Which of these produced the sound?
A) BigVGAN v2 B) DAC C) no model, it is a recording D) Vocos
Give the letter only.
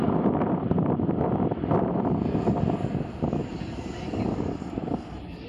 A